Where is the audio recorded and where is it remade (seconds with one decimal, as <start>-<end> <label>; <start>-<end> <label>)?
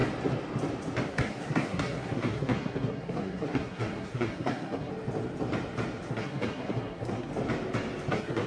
0.0-1.1 recorded; 1.1-4.9 remade; 4.9-6.1 recorded; 6.1-7.3 remade; 7.3-8.1 recorded; 8.1-8.5 remade